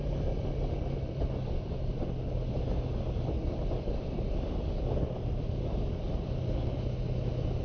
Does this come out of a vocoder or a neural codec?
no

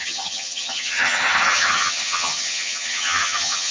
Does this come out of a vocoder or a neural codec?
yes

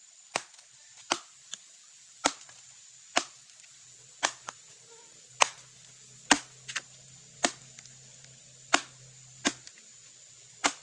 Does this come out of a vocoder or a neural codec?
no